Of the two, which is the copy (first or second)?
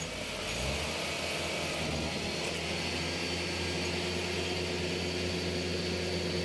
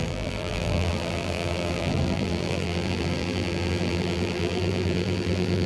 second